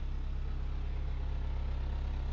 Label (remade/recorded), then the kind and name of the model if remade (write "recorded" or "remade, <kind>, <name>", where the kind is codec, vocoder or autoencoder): recorded